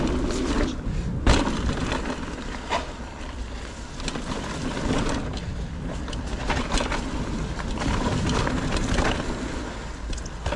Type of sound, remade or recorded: recorded